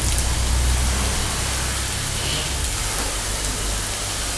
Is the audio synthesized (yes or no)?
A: no